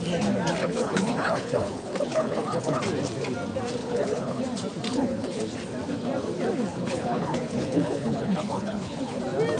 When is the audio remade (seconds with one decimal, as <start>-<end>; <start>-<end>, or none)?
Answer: 0.6-2.8; 3.8-4.4; 4.9-5.4; 6.7-9.2